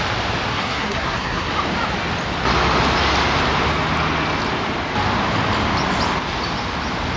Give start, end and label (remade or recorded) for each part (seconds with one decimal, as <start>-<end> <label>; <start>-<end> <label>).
0.0-0.5 recorded; 0.5-1.5 remade; 1.5-7.2 recorded